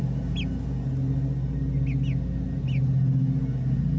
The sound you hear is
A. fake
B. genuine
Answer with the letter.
B